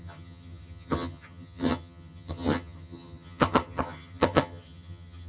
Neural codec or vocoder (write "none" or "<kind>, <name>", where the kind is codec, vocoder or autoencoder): vocoder, HiFi-GAN